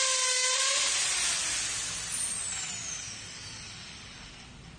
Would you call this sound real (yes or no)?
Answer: yes